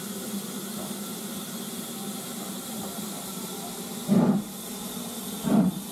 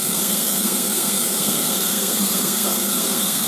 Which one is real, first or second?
first